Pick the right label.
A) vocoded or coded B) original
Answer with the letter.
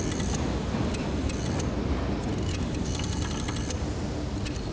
B